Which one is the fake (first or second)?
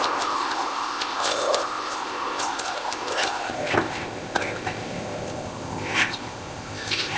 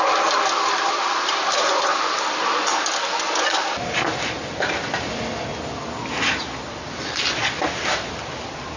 first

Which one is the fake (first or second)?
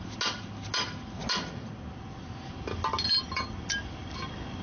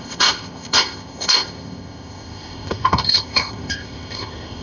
second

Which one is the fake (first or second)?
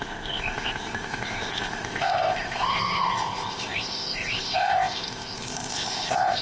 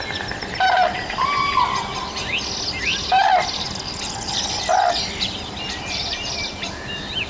first